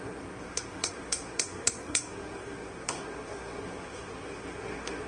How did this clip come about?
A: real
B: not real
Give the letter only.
B